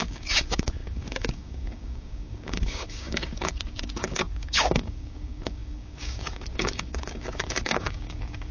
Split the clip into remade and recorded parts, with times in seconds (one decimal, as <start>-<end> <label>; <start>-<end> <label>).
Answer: 0.0-8.5 remade